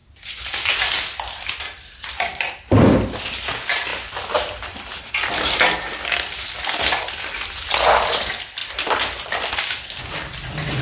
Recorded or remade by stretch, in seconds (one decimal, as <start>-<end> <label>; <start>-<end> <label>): 0.0-10.8 recorded